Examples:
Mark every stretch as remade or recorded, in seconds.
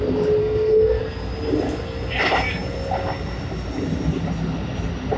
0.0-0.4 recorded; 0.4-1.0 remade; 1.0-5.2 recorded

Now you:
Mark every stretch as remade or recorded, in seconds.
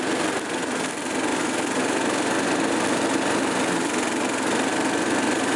0.0-5.6 recorded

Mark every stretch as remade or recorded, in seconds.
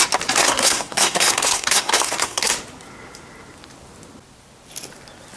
0.0-0.4 recorded; 0.4-2.5 remade; 2.5-5.4 recorded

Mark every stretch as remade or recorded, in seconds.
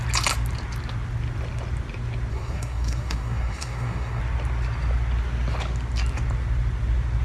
0.0-2.3 recorded; 2.3-4.2 remade; 4.2-7.2 recorded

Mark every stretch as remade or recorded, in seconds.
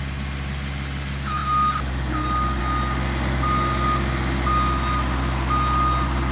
0.0-6.3 recorded